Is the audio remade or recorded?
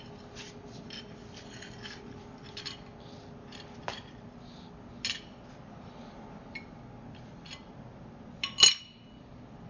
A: recorded